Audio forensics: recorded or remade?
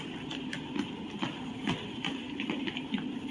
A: remade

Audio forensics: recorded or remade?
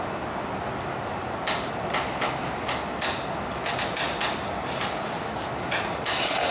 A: recorded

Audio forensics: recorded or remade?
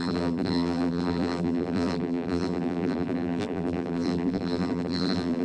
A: remade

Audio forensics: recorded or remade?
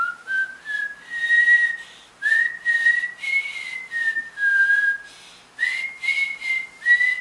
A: recorded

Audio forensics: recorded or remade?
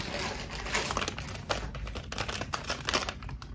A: recorded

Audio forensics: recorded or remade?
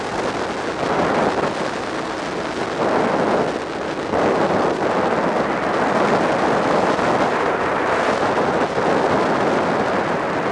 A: recorded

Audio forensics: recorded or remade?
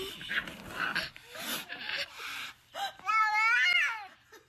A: recorded